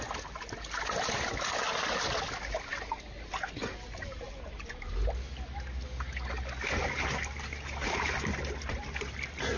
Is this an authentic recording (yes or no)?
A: yes